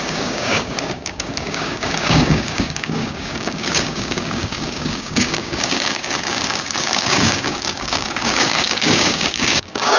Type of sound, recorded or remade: remade